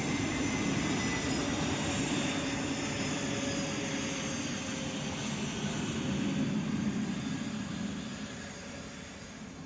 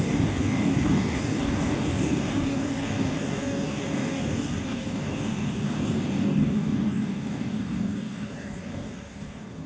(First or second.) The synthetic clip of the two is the second